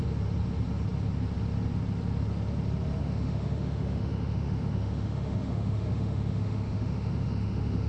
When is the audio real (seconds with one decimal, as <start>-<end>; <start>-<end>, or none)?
0.0-3.0